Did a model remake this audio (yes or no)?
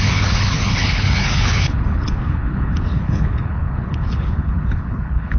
yes